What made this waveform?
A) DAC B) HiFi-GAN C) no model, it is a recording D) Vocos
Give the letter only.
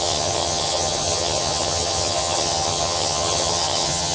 B